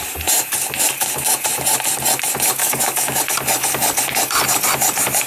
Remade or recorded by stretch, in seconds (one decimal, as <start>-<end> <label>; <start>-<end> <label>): 0.0-2.6 recorded; 2.6-3.2 remade; 3.2-5.3 recorded

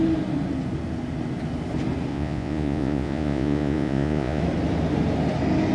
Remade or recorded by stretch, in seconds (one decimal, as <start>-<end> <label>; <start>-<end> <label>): 0.0-2.1 recorded; 2.1-4.4 remade; 4.4-5.7 recorded

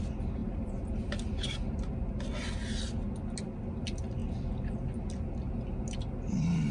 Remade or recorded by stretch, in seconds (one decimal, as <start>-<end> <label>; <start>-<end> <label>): 0.0-0.4 recorded; 0.4-1.0 remade; 1.0-6.7 recorded

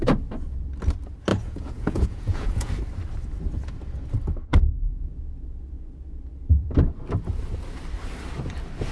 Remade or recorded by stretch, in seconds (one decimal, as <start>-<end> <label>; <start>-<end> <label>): 0.0-1.3 recorded; 1.3-2.7 remade; 2.7-8.9 recorded

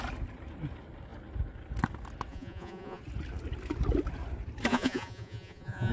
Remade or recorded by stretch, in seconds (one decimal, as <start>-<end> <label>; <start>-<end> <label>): 0.0-2.3 recorded; 2.3-3.0 remade; 3.0-4.7 recorded; 4.7-5.9 remade

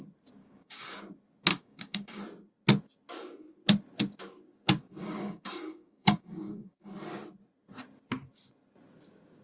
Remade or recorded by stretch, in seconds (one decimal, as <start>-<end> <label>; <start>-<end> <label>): 0.0-0.4 recorded; 0.4-1.0 remade; 1.0-1.5 recorded; 1.5-2.2 remade; 2.2-4.8 recorded; 4.8-6.9 remade; 6.9-9.4 recorded

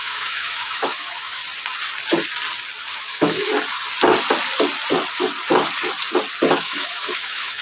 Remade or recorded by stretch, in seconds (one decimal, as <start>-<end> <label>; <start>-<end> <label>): 0.0-1.4 remade; 1.4-2.8 recorded; 2.8-3.5 remade; 3.5-6.5 recorded; 6.5-7.6 remade

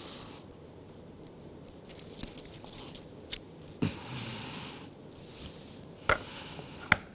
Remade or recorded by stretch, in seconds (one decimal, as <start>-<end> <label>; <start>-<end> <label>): 0.0-7.1 recorded